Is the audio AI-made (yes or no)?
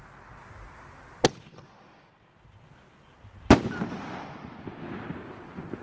no